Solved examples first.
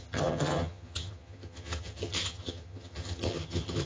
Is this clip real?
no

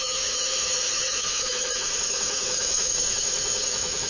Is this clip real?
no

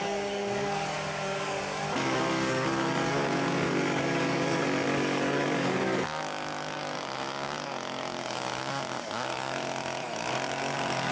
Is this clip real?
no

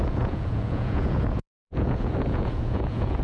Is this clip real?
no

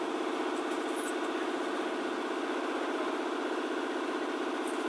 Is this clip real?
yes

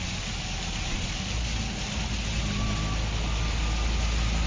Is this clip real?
yes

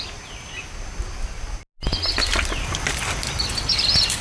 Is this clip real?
yes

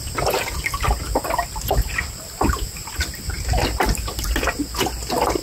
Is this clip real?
yes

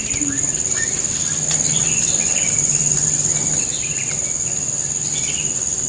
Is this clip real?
yes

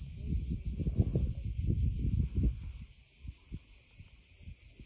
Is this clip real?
yes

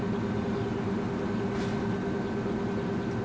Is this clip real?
yes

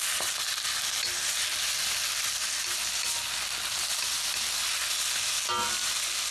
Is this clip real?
yes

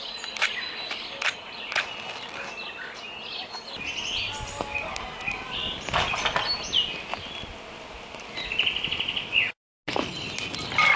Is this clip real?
yes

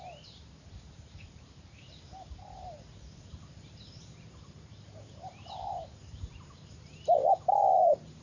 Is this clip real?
no